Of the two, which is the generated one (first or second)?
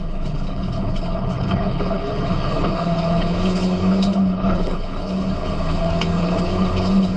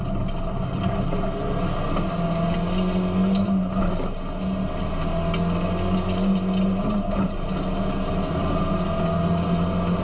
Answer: first